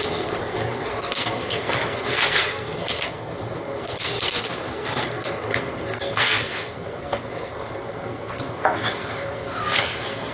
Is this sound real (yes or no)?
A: no